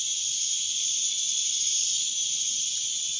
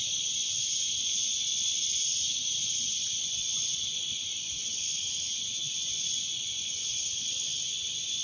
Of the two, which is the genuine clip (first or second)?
first